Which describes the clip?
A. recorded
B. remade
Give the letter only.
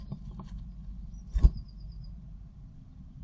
A